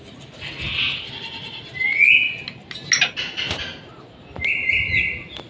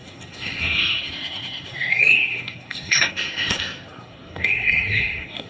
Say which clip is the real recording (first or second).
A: first